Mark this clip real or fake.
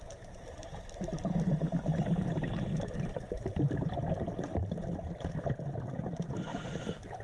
real